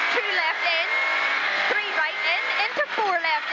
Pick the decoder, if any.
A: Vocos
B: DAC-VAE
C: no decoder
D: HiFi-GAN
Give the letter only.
C